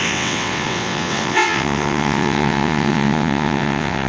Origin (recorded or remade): remade